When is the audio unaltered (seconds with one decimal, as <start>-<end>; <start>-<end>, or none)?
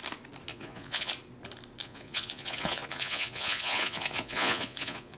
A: 0.0-0.5; 1.1-1.8